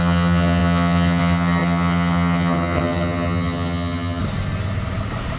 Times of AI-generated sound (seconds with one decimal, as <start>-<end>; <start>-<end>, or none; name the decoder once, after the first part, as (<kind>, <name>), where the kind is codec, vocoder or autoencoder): 0.0-4.2 (vocoder, HiFi-GAN)